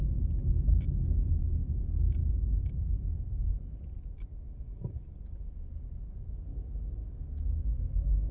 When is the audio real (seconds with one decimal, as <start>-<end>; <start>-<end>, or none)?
0.0-7.0; 7.7-8.3